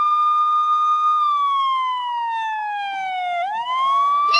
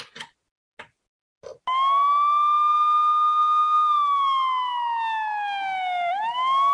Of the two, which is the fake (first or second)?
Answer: first